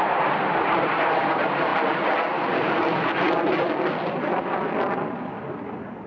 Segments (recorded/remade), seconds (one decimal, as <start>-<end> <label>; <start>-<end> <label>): 0.0-6.1 recorded